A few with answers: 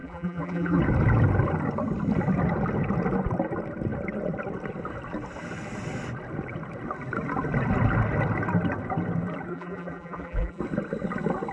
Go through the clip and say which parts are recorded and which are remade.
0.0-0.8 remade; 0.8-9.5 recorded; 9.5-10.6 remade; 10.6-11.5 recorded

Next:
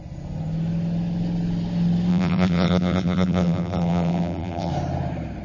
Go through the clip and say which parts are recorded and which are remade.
0.0-2.1 recorded; 2.1-4.7 remade; 4.7-5.4 recorded

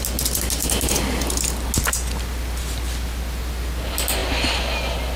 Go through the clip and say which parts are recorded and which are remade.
0.0-5.2 recorded

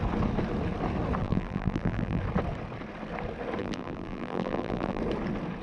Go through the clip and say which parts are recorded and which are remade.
0.0-1.2 recorded; 1.2-2.2 remade; 2.2-3.6 recorded; 3.6-5.0 remade; 5.0-5.6 recorded

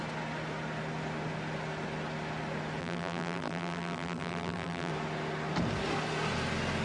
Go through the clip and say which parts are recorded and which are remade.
0.0-2.8 recorded; 2.8-4.9 remade; 4.9-6.8 recorded

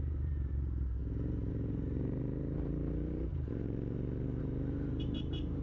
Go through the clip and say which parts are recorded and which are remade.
0.0-1.0 remade; 1.0-1.5 recorded; 1.5-3.3 remade; 3.3-4.4 recorded; 4.4-5.6 remade

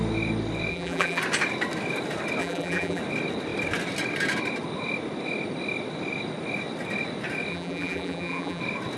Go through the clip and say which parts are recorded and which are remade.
0.0-0.7 recorded; 0.7-1.2 remade; 1.2-2.4 recorded; 2.4-3.0 remade; 3.0-7.5 recorded; 7.5-8.6 remade; 8.6-9.0 recorded

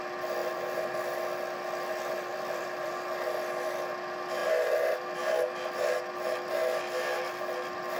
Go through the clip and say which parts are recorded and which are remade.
0.0-0.4 recorded; 0.4-1.2 remade; 1.2-2.3 recorded; 2.3-2.9 remade; 2.9-8.0 recorded